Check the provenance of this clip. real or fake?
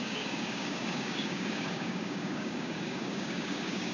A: fake